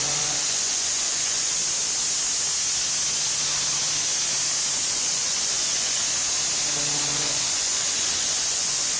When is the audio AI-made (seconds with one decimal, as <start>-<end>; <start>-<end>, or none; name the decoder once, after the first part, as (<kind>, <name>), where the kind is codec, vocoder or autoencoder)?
0.0-1.6 (vocoder, Vocos); 4.9-6.0; 7.0-9.0